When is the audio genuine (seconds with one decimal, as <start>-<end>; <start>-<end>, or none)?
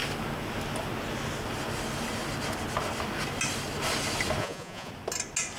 0.0-4.4; 4.9-5.6